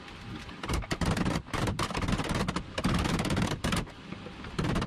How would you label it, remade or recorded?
recorded